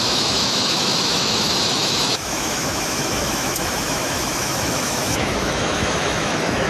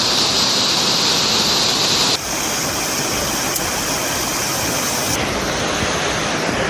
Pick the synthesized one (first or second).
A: first